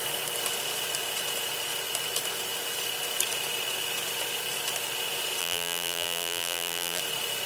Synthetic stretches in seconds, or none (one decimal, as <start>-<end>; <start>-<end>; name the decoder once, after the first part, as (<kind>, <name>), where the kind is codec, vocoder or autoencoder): 5.4-7.0 (vocoder, BigVGAN v2)

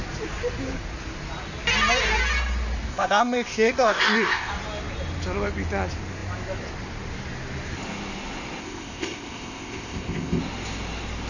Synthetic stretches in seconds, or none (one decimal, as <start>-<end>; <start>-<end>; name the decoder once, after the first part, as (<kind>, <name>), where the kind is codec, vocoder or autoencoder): 2.9-4.5 (codec, ZipCodec); 8.6-10.4